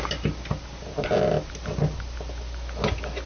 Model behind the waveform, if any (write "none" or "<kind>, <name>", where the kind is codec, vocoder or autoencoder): none